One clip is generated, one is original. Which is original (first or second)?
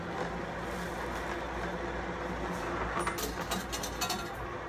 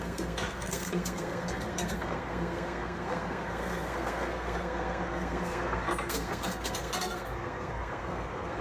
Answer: first